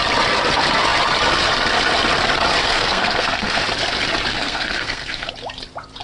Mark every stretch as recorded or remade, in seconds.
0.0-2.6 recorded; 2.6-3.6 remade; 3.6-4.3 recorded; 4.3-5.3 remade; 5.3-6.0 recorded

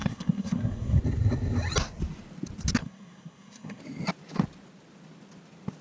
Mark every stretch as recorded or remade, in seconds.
0.0-1.0 remade; 1.0-2.8 recorded; 2.8-3.8 remade; 3.8-5.8 recorded

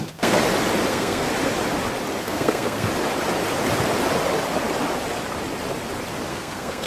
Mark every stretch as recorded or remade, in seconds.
0.0-0.4 remade; 0.4-0.9 recorded; 0.9-1.3 remade; 1.3-2.2 recorded; 2.2-2.9 remade; 2.9-6.3 recorded; 6.3-6.9 remade

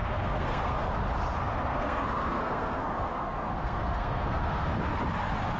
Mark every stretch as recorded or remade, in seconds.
0.0-0.8 remade; 0.8-1.7 recorded; 1.7-4.7 remade; 4.7-5.6 recorded

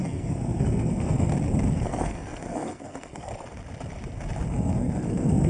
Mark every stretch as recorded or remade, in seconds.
0.0-1.3 remade; 1.3-1.8 recorded; 1.8-3.3 remade; 3.3-4.5 recorded; 4.5-5.5 remade